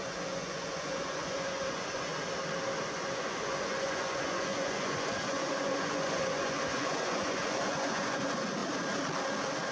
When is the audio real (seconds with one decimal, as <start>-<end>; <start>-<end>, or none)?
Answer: 2.1-2.9; 8.6-9.7

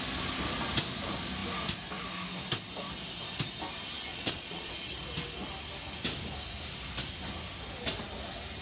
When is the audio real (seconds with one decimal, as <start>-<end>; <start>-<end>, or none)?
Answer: 0.0-4.1; 4.7-8.6

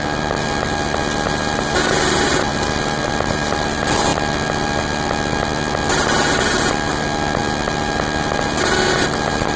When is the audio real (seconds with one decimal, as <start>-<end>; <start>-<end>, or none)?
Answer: 0.0-9.6

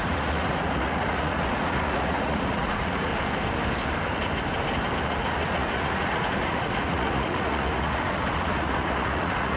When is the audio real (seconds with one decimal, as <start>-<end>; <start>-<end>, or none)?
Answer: 3.1-5.0

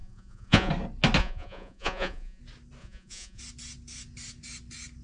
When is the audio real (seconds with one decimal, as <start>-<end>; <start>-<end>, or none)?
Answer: 0.7-1.2; 2.4-2.8; 3.4-5.0

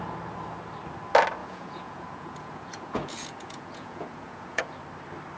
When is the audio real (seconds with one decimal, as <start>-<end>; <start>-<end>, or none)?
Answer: 0.0-1.4; 4.6-5.4

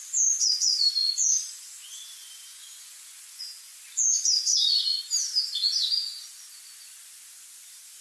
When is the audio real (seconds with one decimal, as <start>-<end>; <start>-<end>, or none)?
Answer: 0.0-1.0; 3.4-4.5; 5.0-8.0

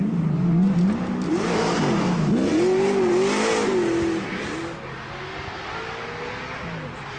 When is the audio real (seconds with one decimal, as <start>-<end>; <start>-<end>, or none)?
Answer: 0.0-7.2